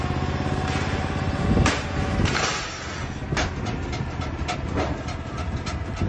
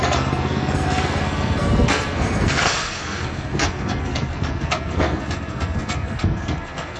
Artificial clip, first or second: second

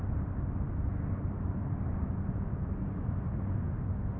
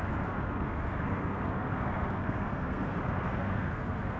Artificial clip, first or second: second